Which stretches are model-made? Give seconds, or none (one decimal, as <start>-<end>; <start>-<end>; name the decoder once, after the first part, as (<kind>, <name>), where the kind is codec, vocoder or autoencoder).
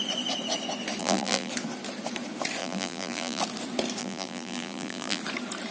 1.0-1.5 (vocoder, BigVGAN v2); 2.6-3.4; 4.0-5.2